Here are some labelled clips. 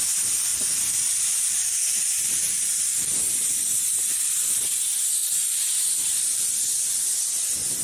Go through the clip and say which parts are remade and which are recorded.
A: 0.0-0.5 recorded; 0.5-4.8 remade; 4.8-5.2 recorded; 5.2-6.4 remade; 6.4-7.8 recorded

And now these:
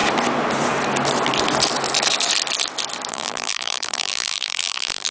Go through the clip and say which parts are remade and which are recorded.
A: 0.0-3.1 recorded; 3.1-5.1 remade

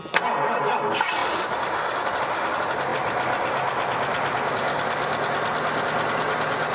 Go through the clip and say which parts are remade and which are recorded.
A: 0.0-2.9 recorded; 2.9-4.5 remade; 4.5-6.7 recorded

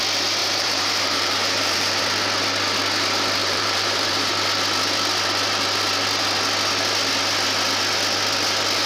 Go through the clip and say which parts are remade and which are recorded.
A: 0.0-0.4 recorded; 0.4-2.0 remade; 2.0-3.4 recorded; 3.4-4.3 remade; 4.3-8.9 recorded

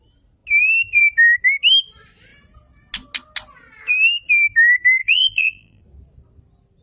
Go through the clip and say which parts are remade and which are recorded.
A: 0.0-5.0 recorded; 5.0-5.8 remade; 5.8-6.8 recorded

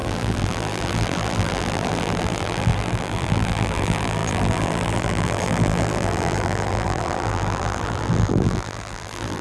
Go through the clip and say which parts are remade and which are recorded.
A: 0.0-9.4 remade